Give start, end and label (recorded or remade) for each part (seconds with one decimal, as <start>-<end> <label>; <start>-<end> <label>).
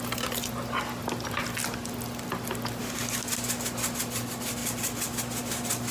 0.0-5.9 recorded